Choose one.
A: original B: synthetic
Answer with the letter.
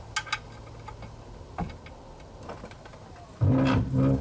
A